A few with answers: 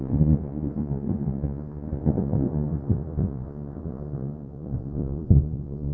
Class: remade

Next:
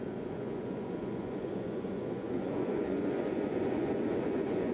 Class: remade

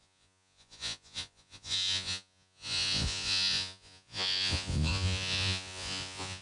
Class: remade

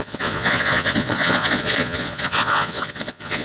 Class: remade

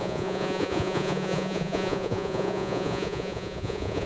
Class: remade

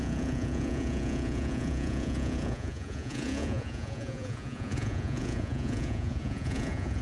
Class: remade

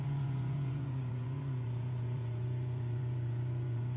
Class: remade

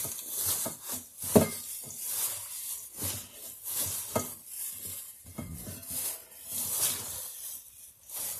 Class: recorded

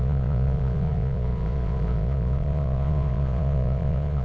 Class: remade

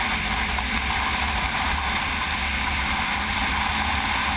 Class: recorded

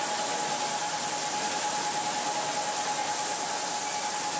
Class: recorded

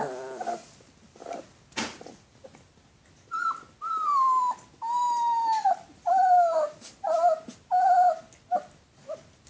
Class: recorded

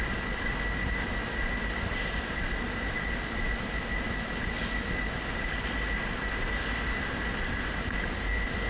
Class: recorded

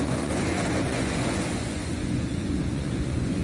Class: remade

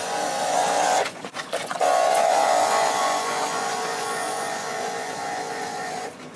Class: remade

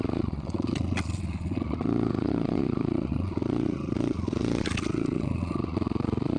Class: remade